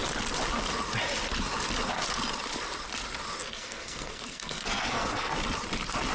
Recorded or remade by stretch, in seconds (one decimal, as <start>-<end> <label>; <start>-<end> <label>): 0.0-3.4 recorded; 3.4-5.3 remade; 5.3-6.1 recorded